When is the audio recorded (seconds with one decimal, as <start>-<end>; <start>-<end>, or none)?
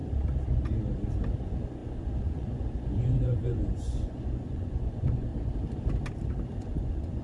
0.0-1.4; 5.3-6.6